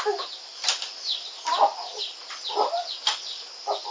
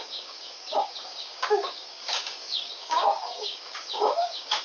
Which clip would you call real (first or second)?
first